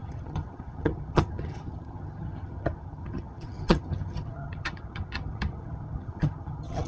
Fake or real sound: fake